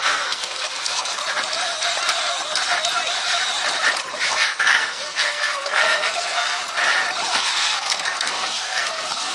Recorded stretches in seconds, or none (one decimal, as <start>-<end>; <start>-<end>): 1.2-4.3; 6.6-7.3

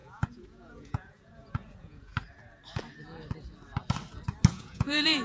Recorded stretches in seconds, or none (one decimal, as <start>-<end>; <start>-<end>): 2.1-4.5

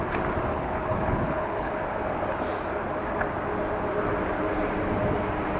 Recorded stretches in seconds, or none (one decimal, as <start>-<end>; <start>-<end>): 0.0-0.5; 1.7-5.6

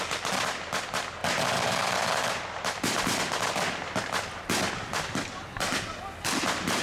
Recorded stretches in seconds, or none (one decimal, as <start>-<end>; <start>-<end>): 0.0-6.8

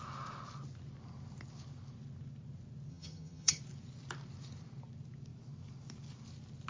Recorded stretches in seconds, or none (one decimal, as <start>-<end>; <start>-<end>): 0.0-2.9; 3.6-6.7

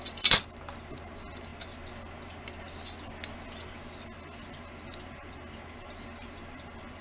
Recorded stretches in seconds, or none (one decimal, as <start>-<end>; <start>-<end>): 0.0-7.0

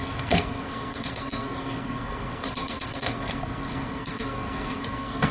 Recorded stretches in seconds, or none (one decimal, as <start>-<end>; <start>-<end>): none